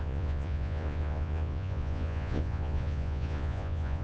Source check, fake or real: fake